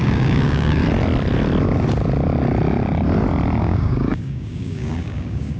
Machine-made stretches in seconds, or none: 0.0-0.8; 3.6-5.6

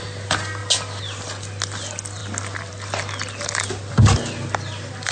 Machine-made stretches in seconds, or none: none

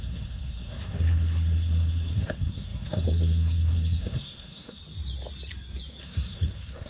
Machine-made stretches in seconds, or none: 0.0-4.8; 6.0-6.9

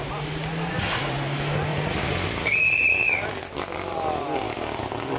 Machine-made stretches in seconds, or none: 1.7-3.4

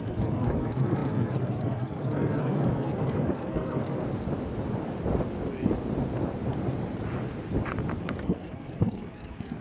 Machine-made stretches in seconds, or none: 0.0-4.0; 8.0-9.6

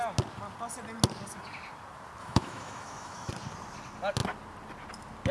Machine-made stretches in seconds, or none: 2.2-3.3